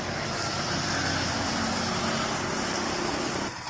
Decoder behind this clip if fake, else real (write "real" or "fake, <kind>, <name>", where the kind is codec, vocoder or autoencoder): real